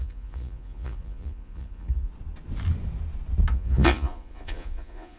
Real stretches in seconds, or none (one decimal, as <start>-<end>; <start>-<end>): 2.1-3.5